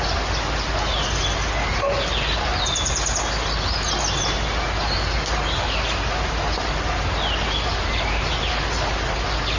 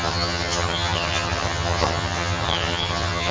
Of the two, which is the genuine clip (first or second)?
first